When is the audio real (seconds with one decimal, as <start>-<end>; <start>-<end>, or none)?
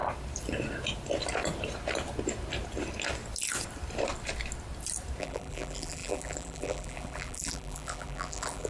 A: 0.0-5.2